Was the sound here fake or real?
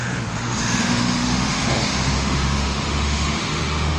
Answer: fake